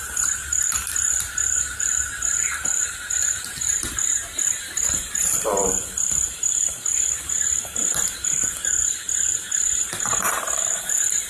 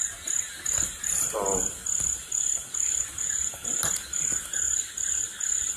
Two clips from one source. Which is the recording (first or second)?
second